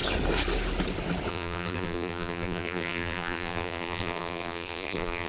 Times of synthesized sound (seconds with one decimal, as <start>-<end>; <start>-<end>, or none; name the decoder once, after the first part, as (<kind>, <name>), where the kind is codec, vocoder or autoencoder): 1.3-5.3 (vocoder, BigVGAN v2)